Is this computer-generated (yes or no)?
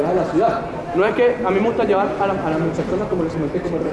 no